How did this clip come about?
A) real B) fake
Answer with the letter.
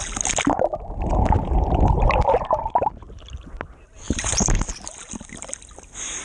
A